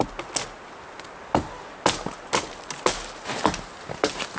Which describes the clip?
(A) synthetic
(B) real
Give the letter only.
B